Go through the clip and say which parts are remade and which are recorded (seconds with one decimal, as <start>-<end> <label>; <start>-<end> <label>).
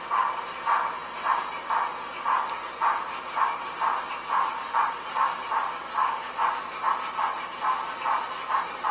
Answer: 0.0-8.9 recorded